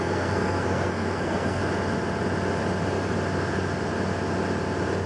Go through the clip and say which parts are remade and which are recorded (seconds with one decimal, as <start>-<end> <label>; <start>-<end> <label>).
0.0-1.6 remade; 1.6-5.1 recorded